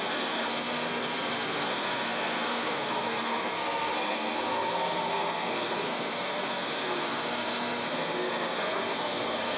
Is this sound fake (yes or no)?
yes